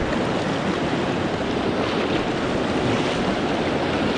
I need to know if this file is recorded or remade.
recorded